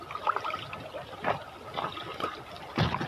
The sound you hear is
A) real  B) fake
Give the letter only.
A